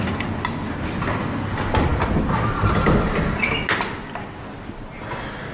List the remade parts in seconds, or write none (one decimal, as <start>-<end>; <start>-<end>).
none